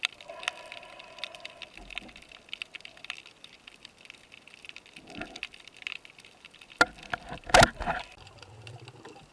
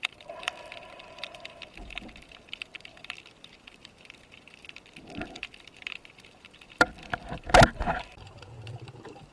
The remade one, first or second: second